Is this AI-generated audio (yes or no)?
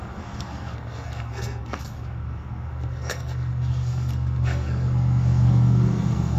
yes